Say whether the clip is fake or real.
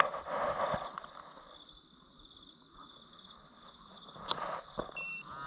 real